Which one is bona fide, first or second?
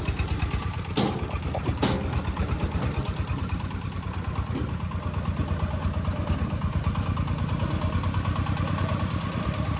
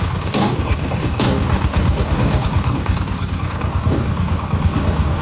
first